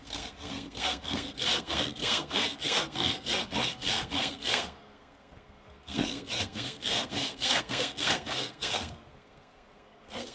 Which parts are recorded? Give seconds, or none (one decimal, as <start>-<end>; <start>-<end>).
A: none